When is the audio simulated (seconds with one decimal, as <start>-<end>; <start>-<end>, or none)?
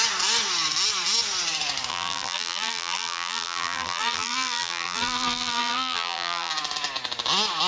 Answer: 1.9-6.5